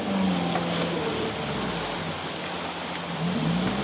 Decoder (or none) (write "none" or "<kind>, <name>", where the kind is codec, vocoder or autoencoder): none